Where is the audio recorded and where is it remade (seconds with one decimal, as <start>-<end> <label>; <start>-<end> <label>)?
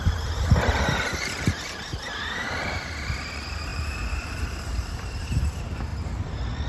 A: 0.0-5.9 remade; 5.9-6.7 recorded